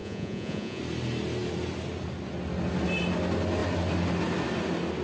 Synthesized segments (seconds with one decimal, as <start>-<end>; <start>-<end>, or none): 0.0-0.8